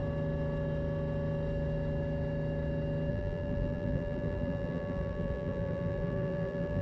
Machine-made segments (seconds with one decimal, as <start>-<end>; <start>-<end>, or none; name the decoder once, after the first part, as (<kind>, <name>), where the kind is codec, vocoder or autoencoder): 3.1-6.8 (vocoder, BigVGAN v2)